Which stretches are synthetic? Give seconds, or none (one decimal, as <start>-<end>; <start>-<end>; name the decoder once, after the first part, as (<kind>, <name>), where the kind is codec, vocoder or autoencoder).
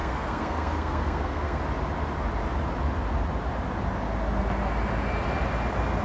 0.0-1.6 (codec, SNAC)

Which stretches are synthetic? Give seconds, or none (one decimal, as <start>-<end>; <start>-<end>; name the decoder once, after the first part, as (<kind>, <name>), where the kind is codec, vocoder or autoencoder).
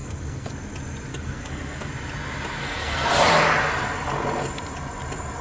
0.0-0.5 (codec, SNAC); 1.1-1.9; 2.6-3.1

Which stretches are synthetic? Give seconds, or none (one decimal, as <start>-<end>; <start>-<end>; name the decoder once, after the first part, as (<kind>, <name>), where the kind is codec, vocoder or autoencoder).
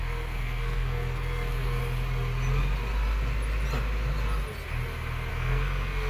0.0-1.8 (codec, SNAC); 5.3-6.1